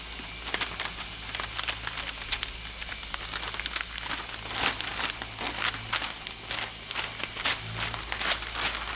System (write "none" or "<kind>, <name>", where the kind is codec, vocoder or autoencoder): none